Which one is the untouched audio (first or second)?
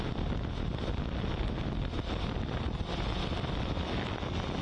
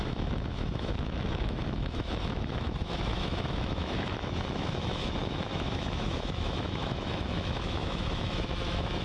first